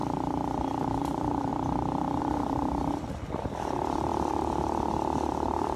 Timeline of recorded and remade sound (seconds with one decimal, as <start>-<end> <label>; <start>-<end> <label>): 0.0-5.8 recorded